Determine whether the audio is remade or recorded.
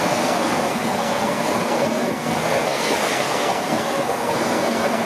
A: remade